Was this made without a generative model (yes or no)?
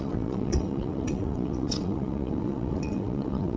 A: no